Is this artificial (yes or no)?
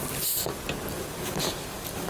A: no